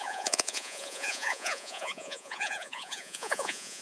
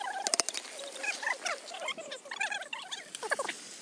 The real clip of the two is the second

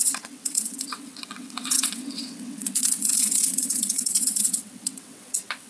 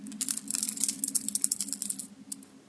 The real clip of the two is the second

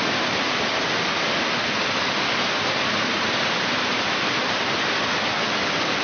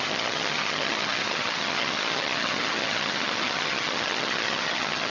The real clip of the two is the first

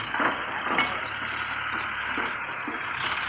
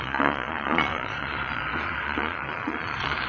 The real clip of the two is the first